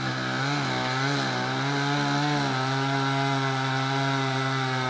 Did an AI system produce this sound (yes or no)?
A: no